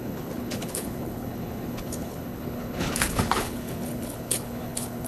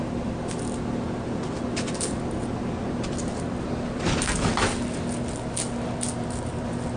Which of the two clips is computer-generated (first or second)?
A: first